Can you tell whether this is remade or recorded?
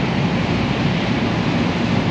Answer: recorded